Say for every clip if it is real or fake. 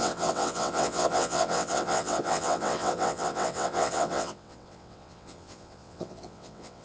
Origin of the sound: fake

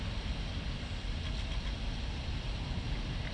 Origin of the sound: real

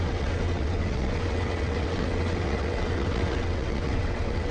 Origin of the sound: fake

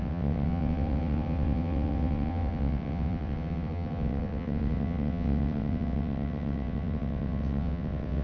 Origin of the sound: fake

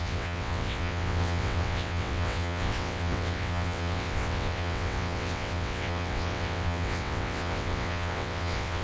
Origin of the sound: fake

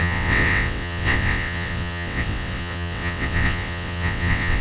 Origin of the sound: fake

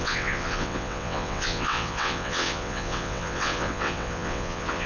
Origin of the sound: fake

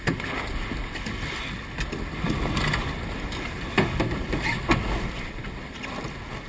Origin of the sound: real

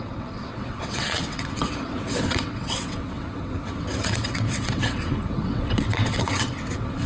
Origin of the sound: fake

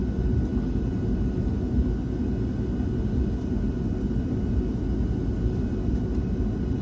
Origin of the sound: real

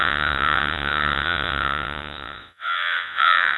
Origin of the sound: fake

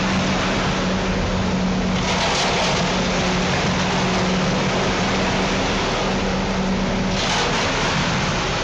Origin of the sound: real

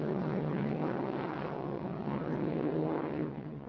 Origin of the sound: fake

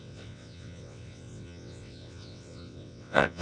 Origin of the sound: fake